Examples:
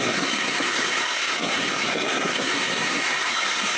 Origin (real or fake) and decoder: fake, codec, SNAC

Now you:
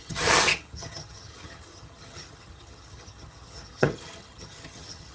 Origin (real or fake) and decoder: fake, vocoder, HiFi-GAN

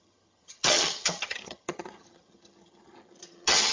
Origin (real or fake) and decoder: fake, vocoder, HiFi-GAN